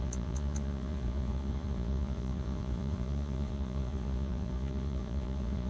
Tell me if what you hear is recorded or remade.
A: remade